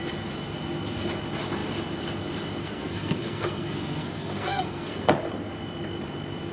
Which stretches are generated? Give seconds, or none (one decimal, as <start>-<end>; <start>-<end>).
2.6-5.1